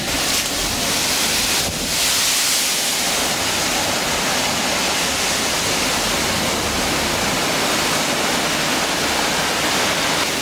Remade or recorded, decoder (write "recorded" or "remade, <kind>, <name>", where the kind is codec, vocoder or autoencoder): recorded